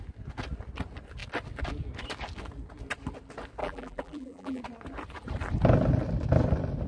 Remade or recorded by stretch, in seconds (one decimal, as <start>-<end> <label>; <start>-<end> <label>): 0.0-3.6 recorded; 3.6-4.6 remade; 4.6-6.9 recorded